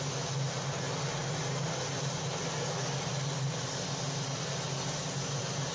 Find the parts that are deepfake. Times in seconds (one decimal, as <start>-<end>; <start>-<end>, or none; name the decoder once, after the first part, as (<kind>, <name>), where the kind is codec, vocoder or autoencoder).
none